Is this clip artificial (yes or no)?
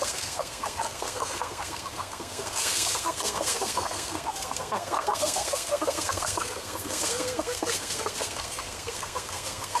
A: yes